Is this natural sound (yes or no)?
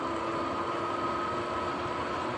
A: yes